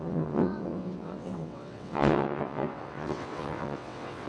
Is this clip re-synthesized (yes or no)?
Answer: yes